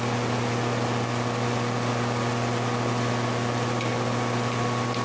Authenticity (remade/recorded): recorded